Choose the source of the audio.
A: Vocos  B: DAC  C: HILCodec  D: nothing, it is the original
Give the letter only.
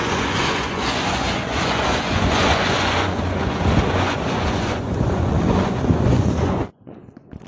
A